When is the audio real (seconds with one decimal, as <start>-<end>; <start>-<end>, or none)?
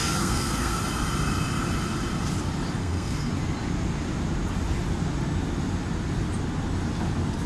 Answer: 0.8-2.8; 3.3-7.5